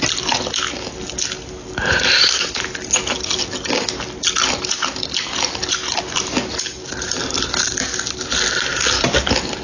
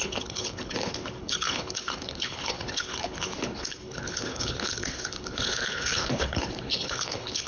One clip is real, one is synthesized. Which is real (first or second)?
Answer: first